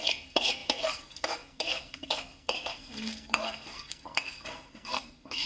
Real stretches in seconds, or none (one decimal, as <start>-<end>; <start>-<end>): none